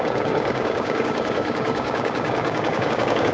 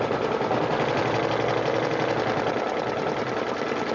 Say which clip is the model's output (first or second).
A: first